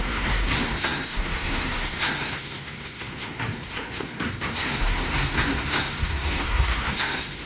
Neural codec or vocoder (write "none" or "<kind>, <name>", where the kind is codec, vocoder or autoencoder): codec, SNAC